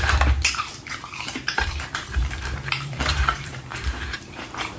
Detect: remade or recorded remade